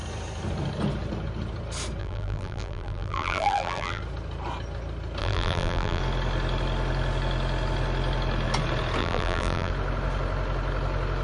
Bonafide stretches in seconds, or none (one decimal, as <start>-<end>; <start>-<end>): 0.0-2.0; 4.0-5.2; 6.0-9.0; 9.7-11.2